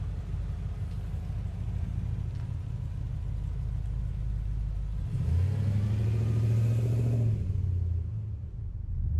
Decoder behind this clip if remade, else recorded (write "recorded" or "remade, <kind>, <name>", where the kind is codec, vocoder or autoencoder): recorded